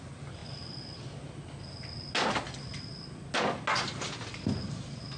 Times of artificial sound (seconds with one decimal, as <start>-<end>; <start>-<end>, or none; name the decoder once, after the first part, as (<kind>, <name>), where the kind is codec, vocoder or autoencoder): none